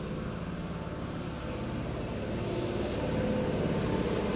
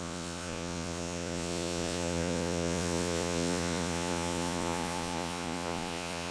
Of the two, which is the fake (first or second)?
second